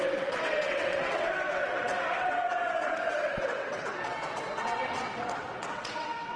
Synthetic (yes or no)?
yes